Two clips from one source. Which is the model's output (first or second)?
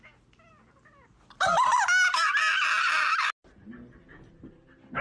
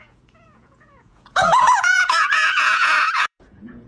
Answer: second